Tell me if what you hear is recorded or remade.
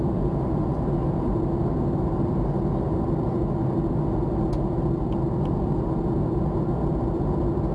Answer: recorded